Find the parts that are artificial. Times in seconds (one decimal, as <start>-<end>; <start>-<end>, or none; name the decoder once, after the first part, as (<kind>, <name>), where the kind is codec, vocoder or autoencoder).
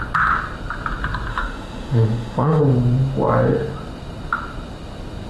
1.3-2.6 (autoencoder, DAC-VAE)